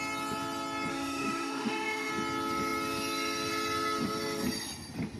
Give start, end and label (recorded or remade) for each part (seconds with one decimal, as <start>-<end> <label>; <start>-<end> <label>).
0.0-0.9 recorded; 0.9-2.1 remade; 2.1-5.2 recorded